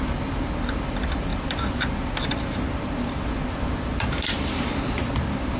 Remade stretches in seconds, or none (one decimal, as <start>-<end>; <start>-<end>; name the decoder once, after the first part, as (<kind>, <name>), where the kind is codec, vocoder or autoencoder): none